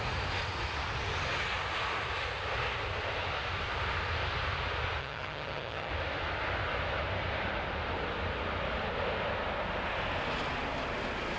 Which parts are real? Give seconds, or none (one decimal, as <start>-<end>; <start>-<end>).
0.0-5.0; 5.9-11.4